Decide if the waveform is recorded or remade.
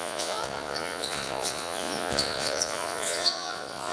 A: remade